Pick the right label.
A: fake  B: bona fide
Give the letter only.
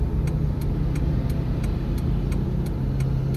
B